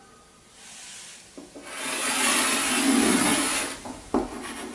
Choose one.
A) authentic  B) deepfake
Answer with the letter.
A